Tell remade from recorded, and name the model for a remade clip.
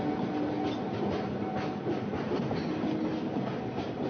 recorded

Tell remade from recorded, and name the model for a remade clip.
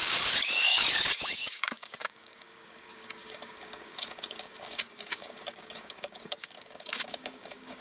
remade, codec, DAC